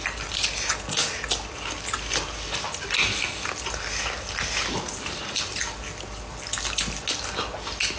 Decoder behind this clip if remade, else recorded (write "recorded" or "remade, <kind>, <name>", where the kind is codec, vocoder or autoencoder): recorded